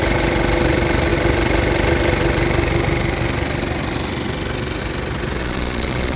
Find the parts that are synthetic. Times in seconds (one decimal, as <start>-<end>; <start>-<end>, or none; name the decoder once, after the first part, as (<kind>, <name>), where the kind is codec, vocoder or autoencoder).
5.4-6.2 (vocoder, Vocos)